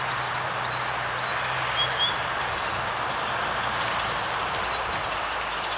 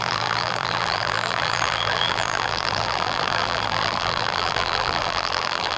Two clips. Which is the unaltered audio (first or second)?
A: first